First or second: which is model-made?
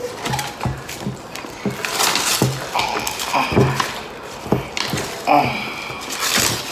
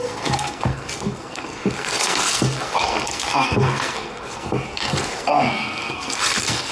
second